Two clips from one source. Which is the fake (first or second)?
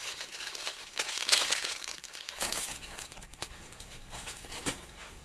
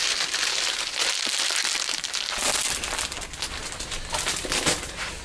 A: first